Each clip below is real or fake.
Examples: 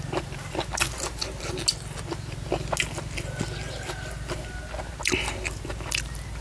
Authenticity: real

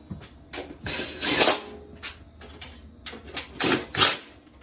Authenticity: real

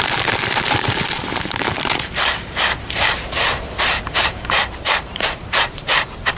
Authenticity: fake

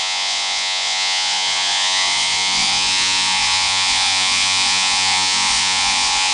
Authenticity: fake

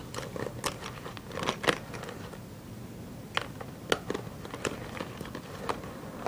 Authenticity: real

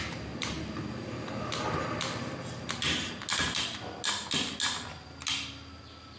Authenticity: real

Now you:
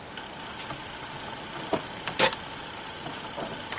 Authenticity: real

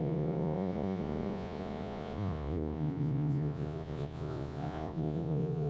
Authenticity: fake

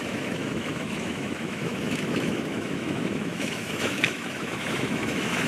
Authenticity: fake